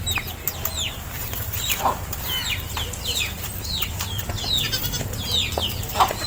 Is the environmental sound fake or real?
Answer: real